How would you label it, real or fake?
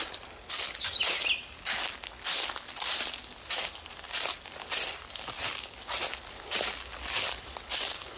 real